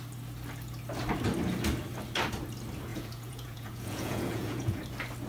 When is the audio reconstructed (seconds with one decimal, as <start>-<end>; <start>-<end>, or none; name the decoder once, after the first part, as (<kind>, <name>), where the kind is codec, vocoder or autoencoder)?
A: 2.9-4.8 (vocoder, Vocos)